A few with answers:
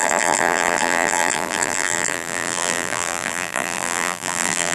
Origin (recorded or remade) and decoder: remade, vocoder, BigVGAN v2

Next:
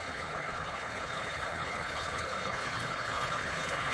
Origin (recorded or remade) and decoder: remade, codec, HILCodec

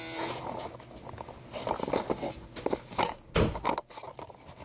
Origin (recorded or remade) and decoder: recorded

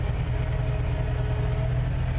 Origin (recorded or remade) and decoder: recorded